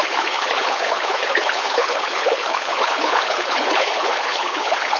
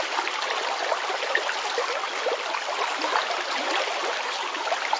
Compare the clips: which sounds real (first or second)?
second